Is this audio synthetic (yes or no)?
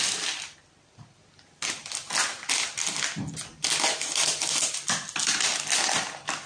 no